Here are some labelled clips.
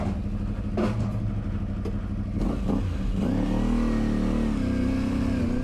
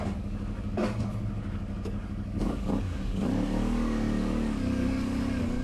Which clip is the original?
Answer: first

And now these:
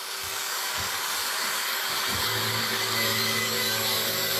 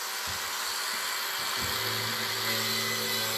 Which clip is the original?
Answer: second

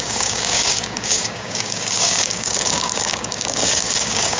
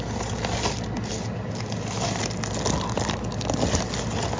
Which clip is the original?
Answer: second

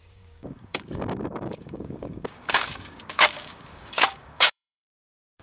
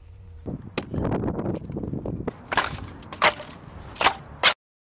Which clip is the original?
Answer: second